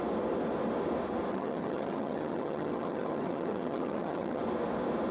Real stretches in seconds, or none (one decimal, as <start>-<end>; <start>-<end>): 0.0-1.3; 4.4-5.1